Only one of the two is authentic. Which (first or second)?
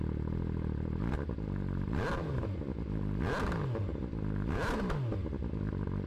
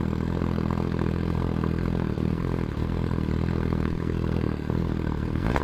first